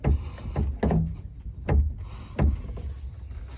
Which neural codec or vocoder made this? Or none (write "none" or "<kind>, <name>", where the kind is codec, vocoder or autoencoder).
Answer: none